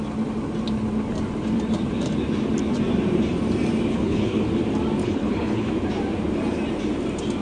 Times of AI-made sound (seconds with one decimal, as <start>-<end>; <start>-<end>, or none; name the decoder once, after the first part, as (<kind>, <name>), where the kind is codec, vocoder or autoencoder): 3.9-4.4 (codec, HILCodec); 5.0-5.7